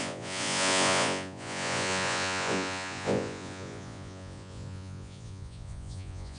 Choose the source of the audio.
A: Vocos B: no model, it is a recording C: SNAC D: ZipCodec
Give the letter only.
A